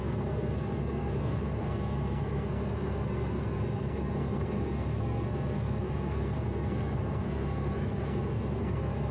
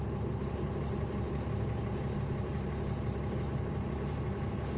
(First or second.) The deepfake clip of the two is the first